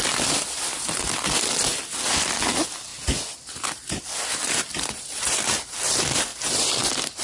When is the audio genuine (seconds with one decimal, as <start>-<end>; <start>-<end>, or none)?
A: 2.9-4.0; 6.3-7.2